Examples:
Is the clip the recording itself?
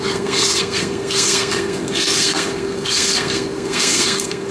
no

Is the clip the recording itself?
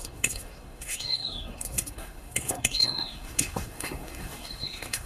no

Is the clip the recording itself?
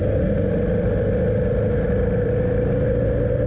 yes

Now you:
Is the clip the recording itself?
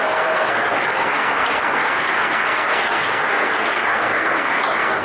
no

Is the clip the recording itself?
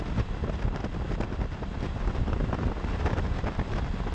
yes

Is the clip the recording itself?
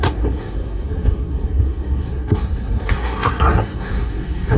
no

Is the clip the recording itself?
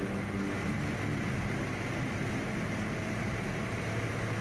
yes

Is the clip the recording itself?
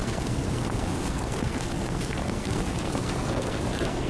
no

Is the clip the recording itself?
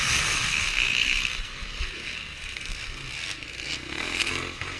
no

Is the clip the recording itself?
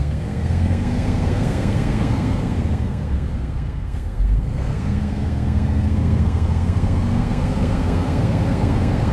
no